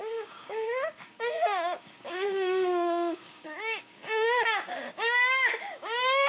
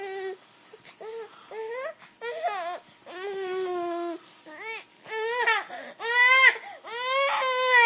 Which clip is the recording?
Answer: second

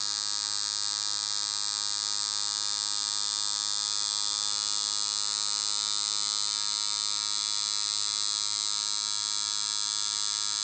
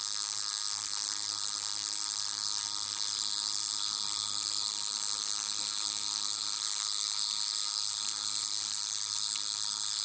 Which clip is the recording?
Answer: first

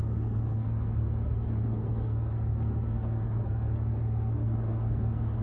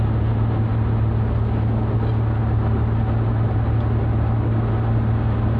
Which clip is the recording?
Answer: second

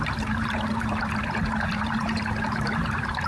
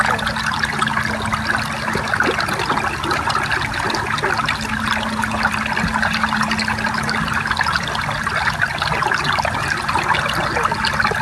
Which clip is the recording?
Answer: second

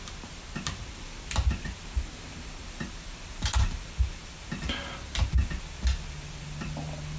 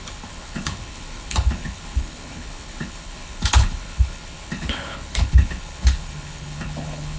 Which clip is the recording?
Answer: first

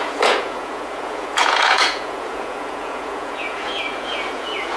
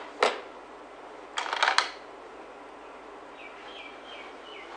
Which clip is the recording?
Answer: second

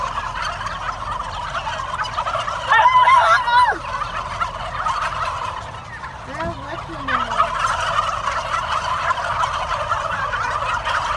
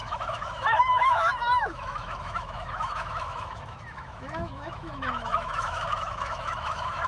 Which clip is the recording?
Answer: first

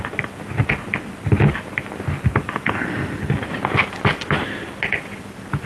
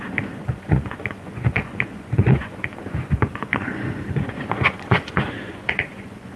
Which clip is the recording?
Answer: first